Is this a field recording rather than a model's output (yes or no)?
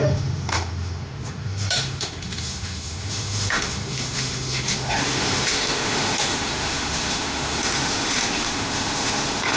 no